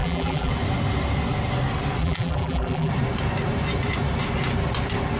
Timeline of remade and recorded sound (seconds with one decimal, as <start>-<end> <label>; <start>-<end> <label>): 0.0-0.5 remade; 0.5-2.0 recorded; 2.0-2.9 remade; 2.9-5.2 recorded